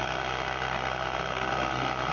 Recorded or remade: remade